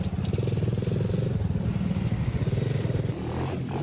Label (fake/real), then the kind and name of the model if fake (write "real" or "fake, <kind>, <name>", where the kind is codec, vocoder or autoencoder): real